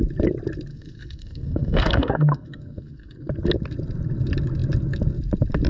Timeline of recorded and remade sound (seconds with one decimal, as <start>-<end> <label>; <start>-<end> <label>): 0.0-0.7 recorded; 0.7-3.3 remade; 3.3-5.7 recorded